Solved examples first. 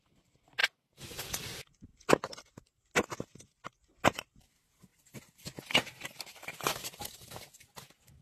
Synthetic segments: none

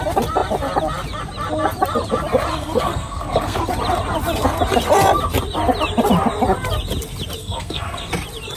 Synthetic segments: 2.5-3.7; 7.4-8.1

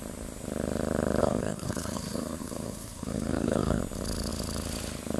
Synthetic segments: 1.2-3.8